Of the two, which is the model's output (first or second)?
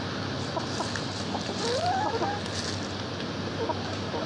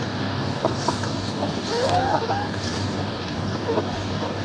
second